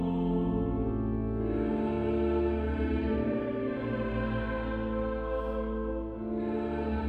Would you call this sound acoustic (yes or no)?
yes